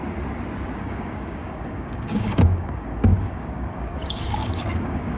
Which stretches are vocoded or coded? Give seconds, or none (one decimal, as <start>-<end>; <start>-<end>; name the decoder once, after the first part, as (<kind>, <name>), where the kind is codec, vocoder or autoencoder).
0.8-5.2 (codec, DAC)